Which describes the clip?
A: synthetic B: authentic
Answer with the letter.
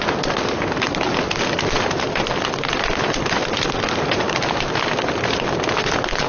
B